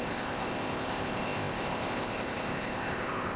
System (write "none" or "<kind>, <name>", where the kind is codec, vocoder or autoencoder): codec, ZipCodec